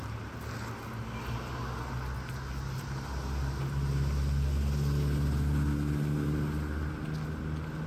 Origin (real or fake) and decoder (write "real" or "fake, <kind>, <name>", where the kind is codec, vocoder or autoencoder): real